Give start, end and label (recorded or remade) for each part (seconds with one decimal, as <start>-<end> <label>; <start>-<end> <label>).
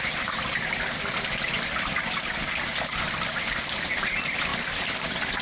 0.0-5.4 recorded